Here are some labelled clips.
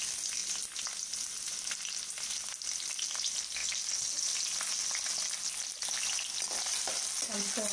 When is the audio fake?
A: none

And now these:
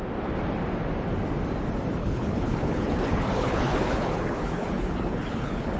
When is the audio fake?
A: 2.0-5.8 (codec, HILCodec)

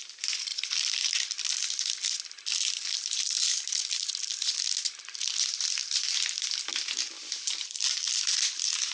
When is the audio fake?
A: none